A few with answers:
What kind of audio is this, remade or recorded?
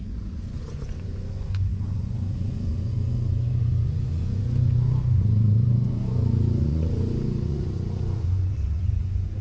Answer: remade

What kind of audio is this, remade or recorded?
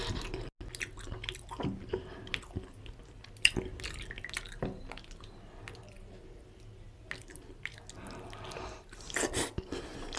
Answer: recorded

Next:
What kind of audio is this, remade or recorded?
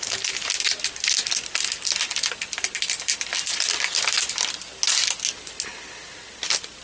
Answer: recorded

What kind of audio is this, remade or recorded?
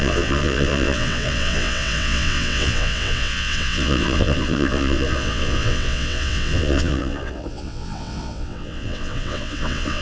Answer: remade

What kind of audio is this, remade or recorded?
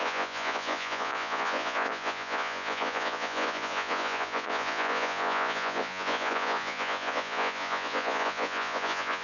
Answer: remade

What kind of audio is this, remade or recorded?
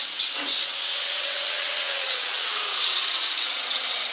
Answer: remade